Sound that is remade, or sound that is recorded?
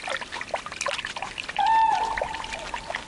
recorded